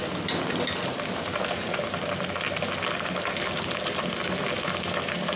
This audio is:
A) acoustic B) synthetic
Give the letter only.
A